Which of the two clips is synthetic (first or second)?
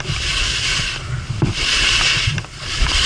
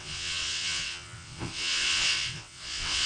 second